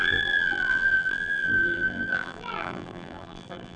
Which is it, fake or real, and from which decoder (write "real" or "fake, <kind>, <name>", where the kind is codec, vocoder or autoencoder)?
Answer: fake, vocoder, BigVGAN v2